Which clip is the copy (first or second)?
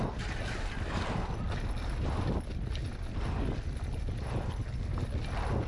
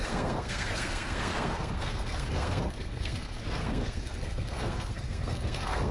second